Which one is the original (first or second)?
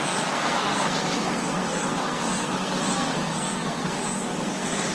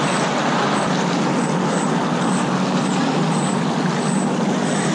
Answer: second